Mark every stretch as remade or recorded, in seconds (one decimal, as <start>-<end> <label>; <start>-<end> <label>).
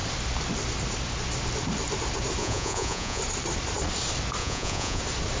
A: 0.0-2.4 recorded; 2.4-3.2 remade; 3.2-4.4 recorded; 4.4-5.0 remade; 5.0-5.4 recorded